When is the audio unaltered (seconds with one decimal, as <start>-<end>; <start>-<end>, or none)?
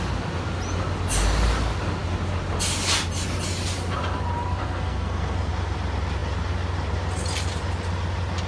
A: 0.0-4.6; 5.5-8.5